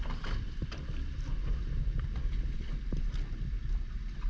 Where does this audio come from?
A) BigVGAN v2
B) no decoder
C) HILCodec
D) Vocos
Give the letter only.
B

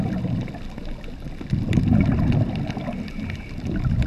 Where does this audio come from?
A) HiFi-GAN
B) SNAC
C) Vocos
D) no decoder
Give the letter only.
D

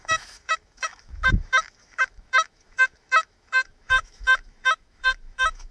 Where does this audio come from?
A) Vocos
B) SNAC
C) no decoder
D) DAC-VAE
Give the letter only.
D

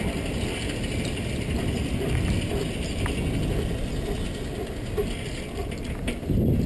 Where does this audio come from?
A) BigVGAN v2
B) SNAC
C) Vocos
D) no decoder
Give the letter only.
D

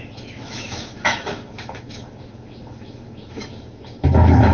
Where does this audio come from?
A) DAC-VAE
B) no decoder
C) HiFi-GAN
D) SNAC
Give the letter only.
A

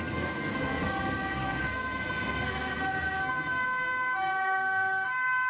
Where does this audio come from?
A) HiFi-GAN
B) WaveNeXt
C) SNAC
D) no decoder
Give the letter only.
C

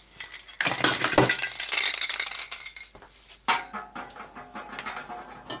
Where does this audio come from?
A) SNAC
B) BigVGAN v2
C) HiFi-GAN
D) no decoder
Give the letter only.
D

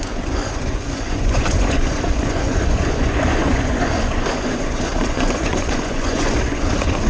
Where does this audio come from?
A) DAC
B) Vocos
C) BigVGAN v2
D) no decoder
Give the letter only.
B